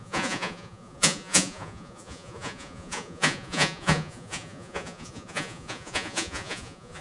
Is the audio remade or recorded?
remade